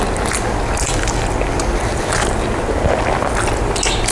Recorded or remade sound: recorded